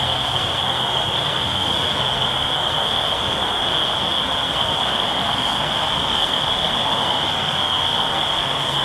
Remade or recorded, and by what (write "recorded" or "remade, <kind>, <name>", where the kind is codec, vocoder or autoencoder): remade, codec, SNAC